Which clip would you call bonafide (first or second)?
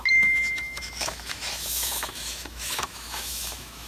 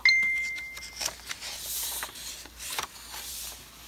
second